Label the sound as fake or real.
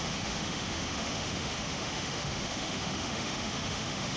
fake